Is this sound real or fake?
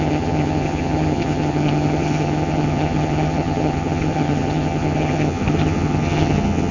fake